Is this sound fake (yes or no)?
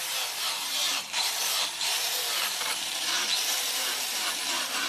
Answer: yes